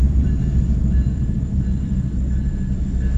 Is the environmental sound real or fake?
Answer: real